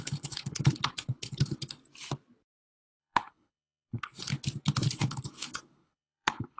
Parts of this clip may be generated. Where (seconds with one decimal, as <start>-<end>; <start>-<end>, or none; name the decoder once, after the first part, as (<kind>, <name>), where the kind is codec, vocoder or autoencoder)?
0.0-1.8 (codec, HILCodec); 3.0-4.3; 4.9-6.6